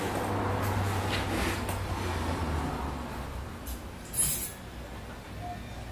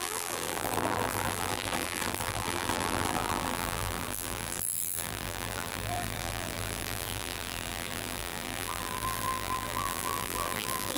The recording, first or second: first